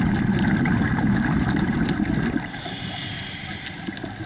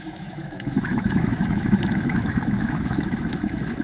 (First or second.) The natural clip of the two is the first